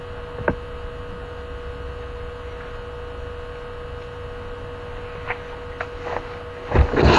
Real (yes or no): yes